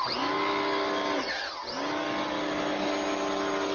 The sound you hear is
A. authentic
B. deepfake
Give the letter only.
A